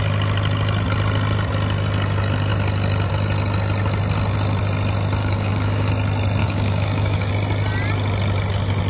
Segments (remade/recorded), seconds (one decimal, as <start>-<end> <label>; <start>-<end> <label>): 0.0-5.2 recorded; 5.2-5.9 remade; 5.9-6.4 recorded; 6.4-7.3 remade; 7.3-8.9 recorded